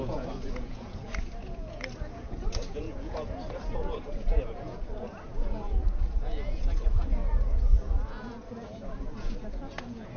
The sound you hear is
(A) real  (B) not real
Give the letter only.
B